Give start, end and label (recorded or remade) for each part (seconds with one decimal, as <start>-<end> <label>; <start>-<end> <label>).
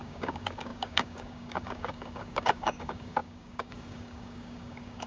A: 0.0-5.1 remade